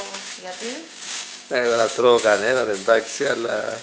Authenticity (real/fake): fake